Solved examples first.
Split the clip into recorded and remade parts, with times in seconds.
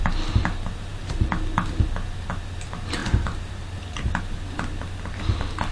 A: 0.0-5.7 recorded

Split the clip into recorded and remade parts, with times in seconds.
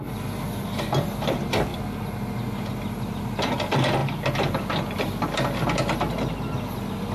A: 0.0-7.1 recorded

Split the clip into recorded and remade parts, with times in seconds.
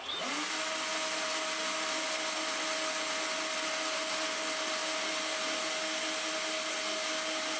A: 0.0-7.6 recorded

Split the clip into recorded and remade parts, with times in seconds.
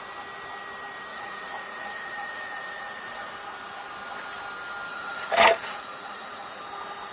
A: 0.0-1.1 recorded; 1.1-3.3 remade; 3.3-4.9 recorded; 4.9-6.6 remade; 6.6-7.1 recorded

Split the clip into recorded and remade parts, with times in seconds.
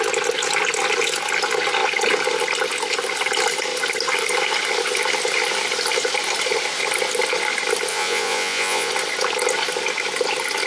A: 0.0-7.9 recorded; 7.9-8.9 remade; 8.9-10.7 recorded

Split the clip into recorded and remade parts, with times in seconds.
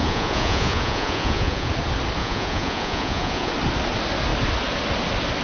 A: 0.0-1.7 remade; 1.7-2.2 recorded; 2.2-3.5 remade; 3.5-5.4 recorded